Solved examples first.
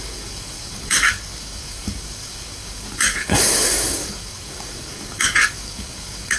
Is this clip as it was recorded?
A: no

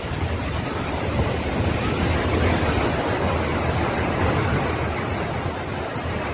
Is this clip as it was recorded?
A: yes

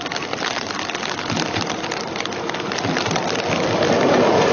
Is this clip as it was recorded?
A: yes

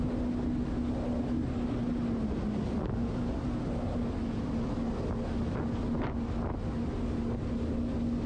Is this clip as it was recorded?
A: yes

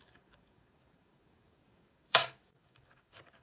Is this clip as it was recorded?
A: no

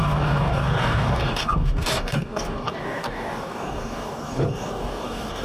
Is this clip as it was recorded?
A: no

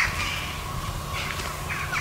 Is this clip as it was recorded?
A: yes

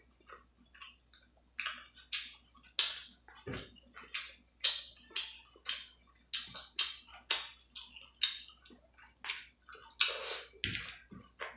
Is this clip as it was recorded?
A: yes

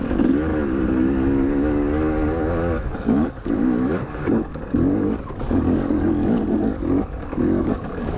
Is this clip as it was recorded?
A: no